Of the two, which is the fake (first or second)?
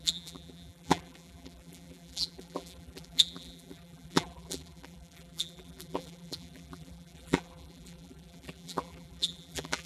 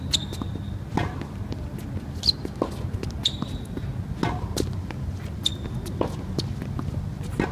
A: first